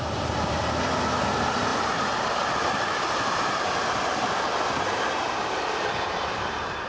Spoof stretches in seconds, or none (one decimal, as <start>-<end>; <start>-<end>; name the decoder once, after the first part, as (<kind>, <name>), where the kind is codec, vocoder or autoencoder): 0.0-6.9 (vocoder, BigVGAN v2)